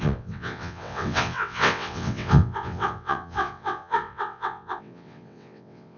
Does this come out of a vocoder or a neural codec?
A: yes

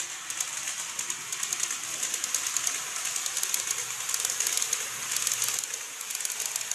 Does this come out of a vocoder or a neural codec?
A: no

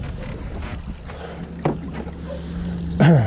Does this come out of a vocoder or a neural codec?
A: no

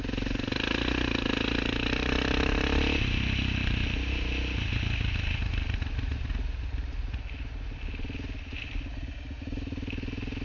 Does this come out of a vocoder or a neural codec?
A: no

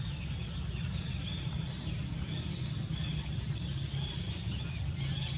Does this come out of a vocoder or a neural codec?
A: no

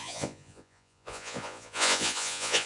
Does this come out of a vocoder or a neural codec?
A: yes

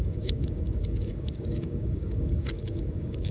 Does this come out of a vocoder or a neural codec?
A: yes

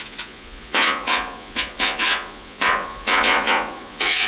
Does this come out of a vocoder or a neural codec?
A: yes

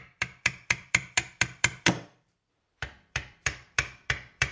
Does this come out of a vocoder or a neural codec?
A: yes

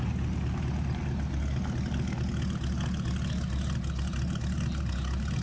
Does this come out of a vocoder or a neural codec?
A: no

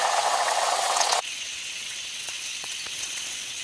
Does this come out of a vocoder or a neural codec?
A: yes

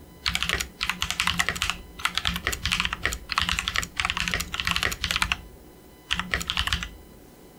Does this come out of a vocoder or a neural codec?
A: no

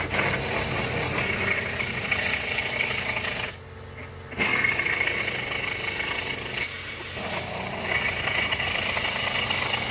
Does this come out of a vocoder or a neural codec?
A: no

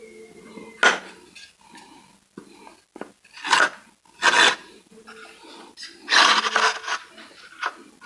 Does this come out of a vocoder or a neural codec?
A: no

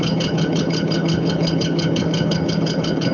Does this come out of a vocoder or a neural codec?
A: yes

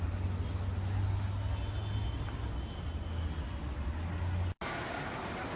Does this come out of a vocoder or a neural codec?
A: no